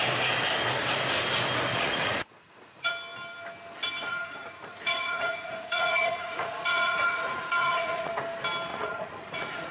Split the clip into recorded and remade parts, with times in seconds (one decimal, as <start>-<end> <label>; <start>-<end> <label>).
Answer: 0.0-1.7 recorded; 1.7-2.9 remade; 2.9-4.0 recorded; 4.0-8.1 remade; 8.1-8.7 recorded; 8.7-9.7 remade